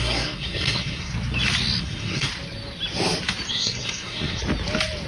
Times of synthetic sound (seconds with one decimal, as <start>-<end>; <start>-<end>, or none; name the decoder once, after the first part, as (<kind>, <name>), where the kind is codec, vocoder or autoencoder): 0.0-1.1 (codec, SNAC); 1.8-2.3; 3.5-4.4